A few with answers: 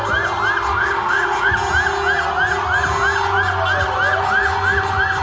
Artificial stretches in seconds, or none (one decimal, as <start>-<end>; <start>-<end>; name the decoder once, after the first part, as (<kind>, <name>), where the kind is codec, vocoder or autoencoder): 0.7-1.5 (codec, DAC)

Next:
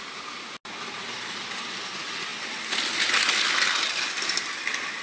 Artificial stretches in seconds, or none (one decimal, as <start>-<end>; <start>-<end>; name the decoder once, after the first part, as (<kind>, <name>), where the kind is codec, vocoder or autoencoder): none

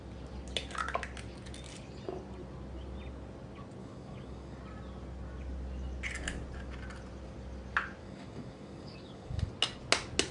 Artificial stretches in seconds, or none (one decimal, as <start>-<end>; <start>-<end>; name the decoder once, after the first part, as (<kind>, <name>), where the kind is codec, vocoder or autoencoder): 3.8-4.6 (codec, DAC); 8.0-9.5